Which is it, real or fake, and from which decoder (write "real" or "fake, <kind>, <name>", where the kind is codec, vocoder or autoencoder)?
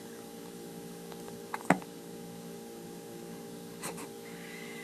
fake, codec, DAC